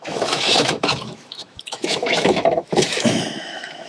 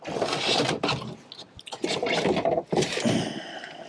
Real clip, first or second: second